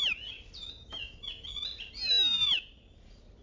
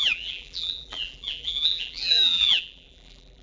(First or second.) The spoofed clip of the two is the second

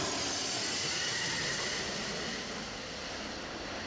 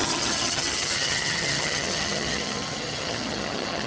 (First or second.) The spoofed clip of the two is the second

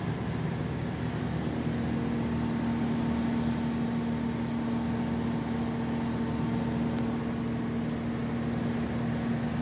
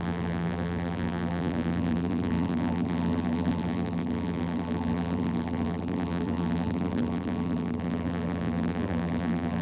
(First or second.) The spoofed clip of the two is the second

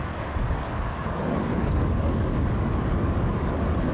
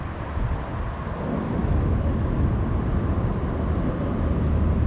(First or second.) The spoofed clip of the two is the first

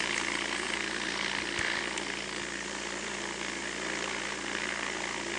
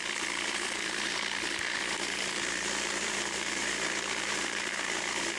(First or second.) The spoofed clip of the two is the second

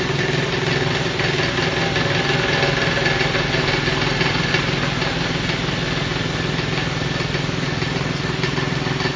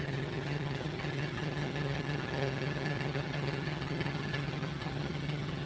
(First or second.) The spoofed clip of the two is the second